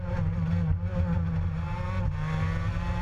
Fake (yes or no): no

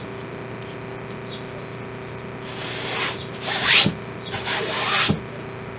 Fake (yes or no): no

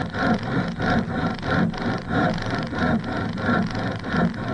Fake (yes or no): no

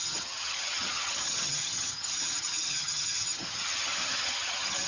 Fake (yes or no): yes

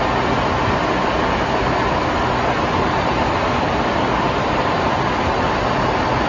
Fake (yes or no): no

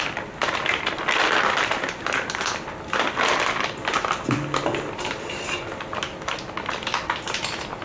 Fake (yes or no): no